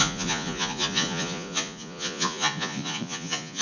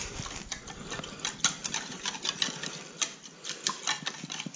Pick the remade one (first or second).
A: first